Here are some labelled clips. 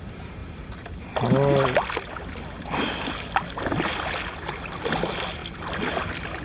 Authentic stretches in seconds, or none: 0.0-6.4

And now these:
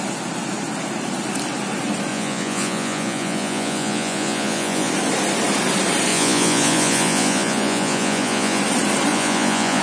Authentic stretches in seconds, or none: 0.0-2.1; 4.9-6.1; 8.6-9.1

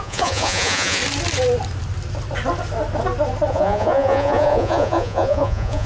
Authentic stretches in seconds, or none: 1.0-3.5

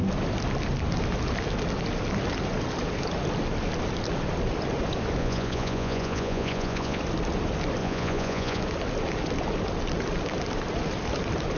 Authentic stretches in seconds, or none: 0.0-5.2; 7.0-7.8; 8.6-11.6

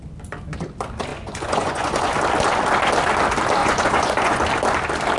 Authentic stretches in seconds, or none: 0.0-1.1; 2.1-3.6; 4.4-5.2

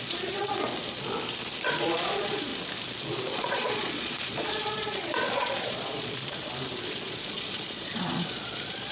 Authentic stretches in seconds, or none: 0.7-1.6; 2.5-3.1; 6.2-6.9